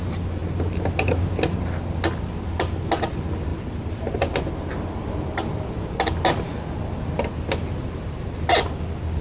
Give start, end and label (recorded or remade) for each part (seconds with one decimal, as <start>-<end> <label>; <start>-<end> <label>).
0.0-9.2 recorded